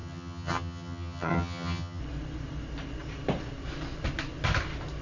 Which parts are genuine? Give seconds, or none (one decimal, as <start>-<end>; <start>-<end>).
2.0-5.0